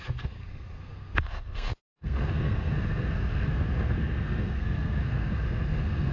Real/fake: fake